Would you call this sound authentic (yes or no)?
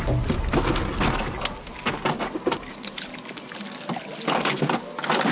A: yes